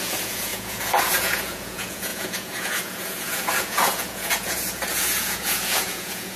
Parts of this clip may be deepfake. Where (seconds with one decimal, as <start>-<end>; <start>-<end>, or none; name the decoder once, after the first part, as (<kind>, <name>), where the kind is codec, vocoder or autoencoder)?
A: 0.0-6.4 (vocoder, Vocos)